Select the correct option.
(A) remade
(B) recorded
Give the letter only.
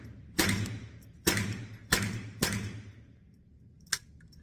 A